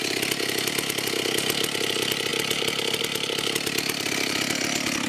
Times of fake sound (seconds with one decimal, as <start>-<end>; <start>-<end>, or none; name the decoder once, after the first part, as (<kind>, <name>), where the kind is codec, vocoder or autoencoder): none